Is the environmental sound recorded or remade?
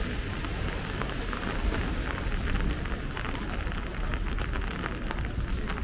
recorded